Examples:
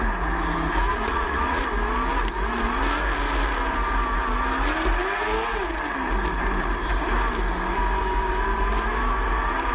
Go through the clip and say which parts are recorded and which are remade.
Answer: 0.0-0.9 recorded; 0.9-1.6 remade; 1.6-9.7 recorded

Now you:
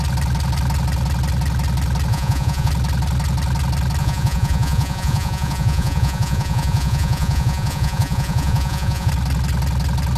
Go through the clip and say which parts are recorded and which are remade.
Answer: 0.0-2.1 recorded; 2.1-2.7 remade; 2.7-4.0 recorded; 4.0-9.1 remade; 9.1-10.2 recorded

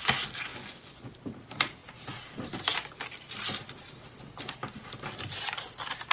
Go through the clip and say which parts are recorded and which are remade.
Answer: 0.0-0.5 recorded; 0.5-1.1 remade; 1.1-6.1 recorded

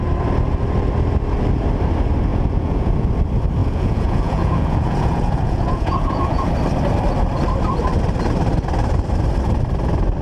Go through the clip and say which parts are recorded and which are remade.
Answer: 0.0-2.3 recorded; 2.3-3.1 remade; 3.1-3.6 recorded; 3.6-6.5 remade; 6.5-10.2 recorded

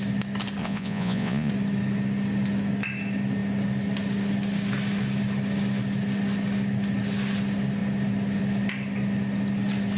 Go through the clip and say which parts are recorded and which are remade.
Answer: 0.0-0.6 recorded; 0.6-1.5 remade; 1.5-10.0 recorded

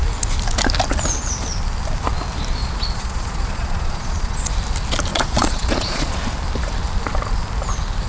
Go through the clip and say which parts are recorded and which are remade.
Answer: 0.0-2.6 recorded; 2.6-4.5 remade; 4.5-5.1 recorded; 5.1-6.2 remade; 6.2-8.1 recorded